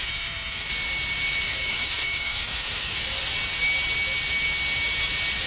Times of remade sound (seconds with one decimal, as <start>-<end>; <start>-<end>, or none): 0.0-0.7; 1.4-2.9